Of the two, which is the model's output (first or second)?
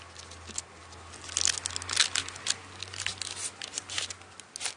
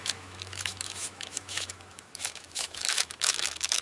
second